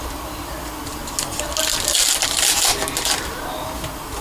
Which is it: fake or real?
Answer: real